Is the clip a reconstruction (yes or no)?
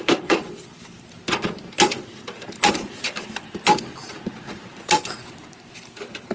yes